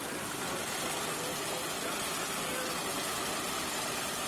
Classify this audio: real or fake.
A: real